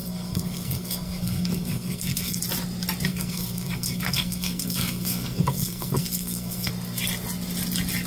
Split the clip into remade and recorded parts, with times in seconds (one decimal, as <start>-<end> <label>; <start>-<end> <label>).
0.0-2.4 remade; 2.4-3.1 recorded; 3.1-6.7 remade; 6.7-8.1 recorded